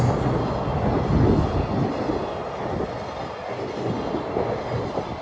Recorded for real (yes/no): yes